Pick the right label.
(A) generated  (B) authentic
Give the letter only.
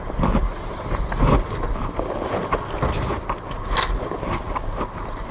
B